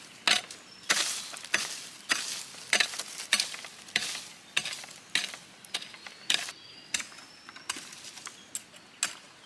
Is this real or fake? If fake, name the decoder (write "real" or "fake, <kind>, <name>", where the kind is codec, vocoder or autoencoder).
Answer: real